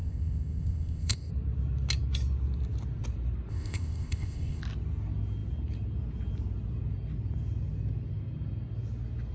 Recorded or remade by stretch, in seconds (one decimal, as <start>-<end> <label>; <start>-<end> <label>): 0.0-1.3 remade; 1.3-3.5 recorded; 3.5-4.6 remade; 4.6-9.3 recorded